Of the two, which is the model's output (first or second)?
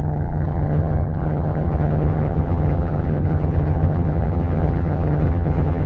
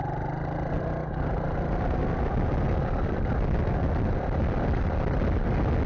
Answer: first